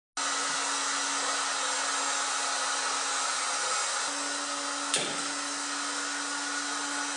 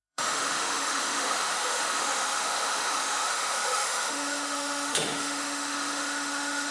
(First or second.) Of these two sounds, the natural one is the first